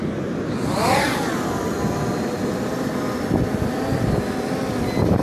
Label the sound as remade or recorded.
recorded